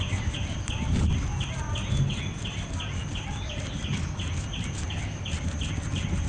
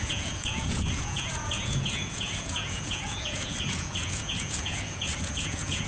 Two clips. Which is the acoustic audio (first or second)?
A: first